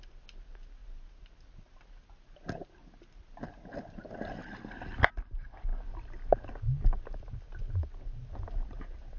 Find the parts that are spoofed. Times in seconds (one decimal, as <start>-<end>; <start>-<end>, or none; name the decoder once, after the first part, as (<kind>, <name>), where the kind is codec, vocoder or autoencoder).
none